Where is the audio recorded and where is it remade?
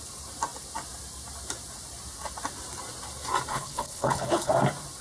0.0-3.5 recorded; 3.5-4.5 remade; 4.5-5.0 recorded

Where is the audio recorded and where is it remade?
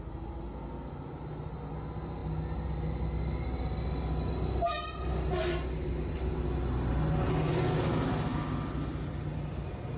0.0-10.0 recorded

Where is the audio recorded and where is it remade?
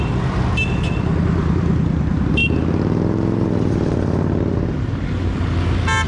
0.0-6.1 recorded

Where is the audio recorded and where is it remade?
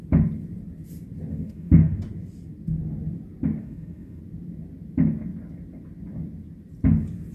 0.0-1.3 recorded; 1.3-2.0 remade; 2.0-3.6 recorded; 3.6-4.2 remade; 4.2-7.3 recorded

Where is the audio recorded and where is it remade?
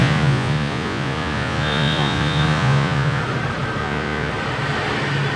0.0-3.2 remade; 3.2-3.8 recorded; 3.8-4.3 remade; 4.3-5.4 recorded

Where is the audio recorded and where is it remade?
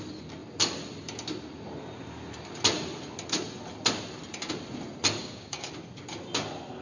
0.0-5.2 recorded; 5.2-5.7 remade; 5.7-6.8 recorded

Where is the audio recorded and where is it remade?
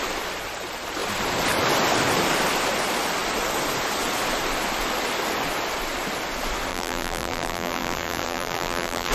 0.0-6.7 recorded; 6.7-9.1 remade